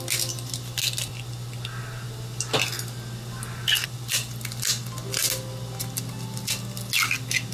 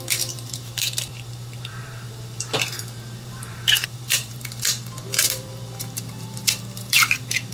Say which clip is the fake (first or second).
second